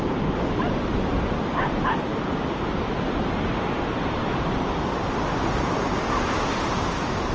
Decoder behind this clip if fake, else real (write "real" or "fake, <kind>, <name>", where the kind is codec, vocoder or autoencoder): real